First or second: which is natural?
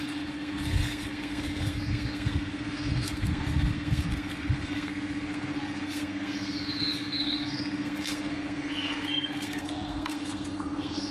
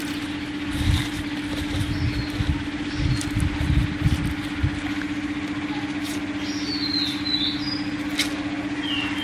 second